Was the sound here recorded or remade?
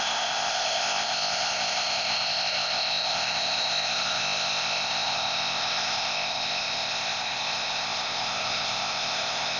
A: remade